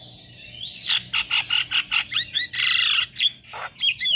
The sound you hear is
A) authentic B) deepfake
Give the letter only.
A